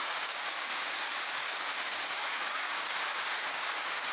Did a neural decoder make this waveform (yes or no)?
yes